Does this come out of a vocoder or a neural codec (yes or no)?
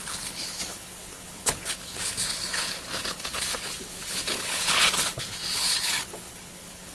yes